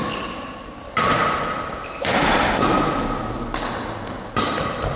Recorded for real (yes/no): yes